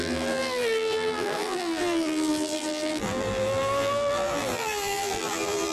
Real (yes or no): no